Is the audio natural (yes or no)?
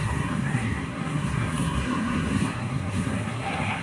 no